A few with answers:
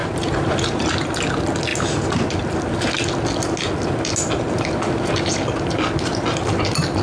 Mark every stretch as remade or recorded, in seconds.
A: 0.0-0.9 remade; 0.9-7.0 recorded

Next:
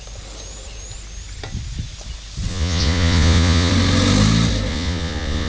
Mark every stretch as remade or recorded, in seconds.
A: 0.0-2.5 recorded; 2.5-3.7 remade; 3.7-4.7 recorded; 4.7-5.5 remade

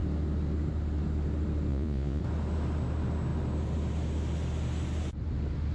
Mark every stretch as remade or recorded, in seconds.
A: 0.0-1.7 recorded; 1.7-2.2 remade; 2.2-5.7 recorded